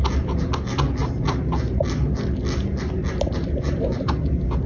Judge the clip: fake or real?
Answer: real